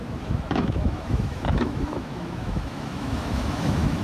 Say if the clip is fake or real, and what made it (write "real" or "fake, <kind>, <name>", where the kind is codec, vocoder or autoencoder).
fake, autoencoder, DAC-VAE